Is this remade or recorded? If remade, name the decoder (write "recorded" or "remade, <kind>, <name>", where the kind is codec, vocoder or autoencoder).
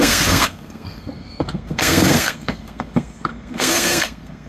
remade, codec, SNAC